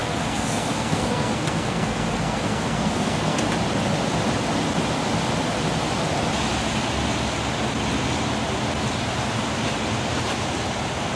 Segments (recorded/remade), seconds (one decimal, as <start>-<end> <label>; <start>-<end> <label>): 0.0-3.4 remade; 3.4-11.2 recorded